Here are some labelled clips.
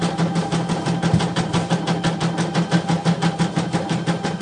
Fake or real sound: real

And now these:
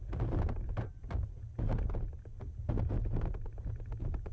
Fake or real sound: real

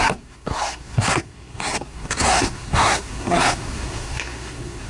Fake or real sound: fake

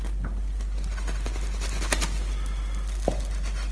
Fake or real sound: real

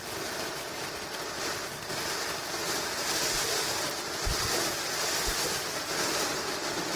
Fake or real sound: fake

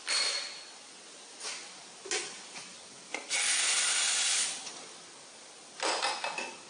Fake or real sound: real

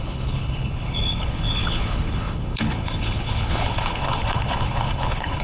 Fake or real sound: fake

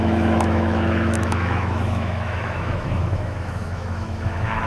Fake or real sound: fake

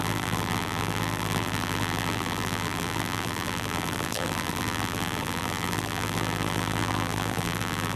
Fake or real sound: fake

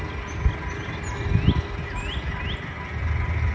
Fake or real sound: real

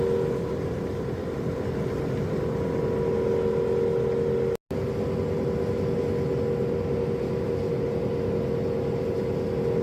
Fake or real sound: real